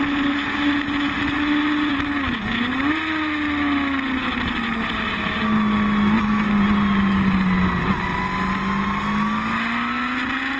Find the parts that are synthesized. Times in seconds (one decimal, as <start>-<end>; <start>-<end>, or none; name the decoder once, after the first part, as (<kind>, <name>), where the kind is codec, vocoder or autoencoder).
none